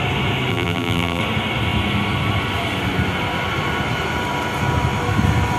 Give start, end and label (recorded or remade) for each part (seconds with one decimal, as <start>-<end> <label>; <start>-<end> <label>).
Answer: 0.0-0.5 recorded; 0.5-1.2 remade; 1.2-5.6 recorded